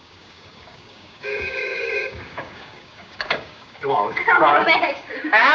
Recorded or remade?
remade